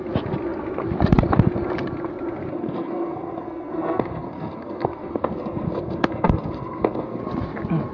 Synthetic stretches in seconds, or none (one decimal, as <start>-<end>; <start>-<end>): 2.5-7.2